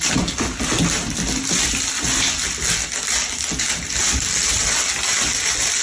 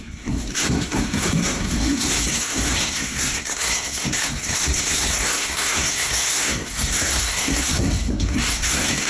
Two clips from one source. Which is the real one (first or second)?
first